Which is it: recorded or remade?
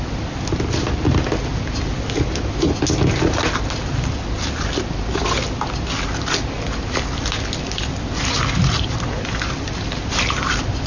recorded